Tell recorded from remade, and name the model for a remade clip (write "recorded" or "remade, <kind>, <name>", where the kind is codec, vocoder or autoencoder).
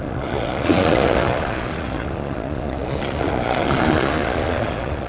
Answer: remade, vocoder, Vocos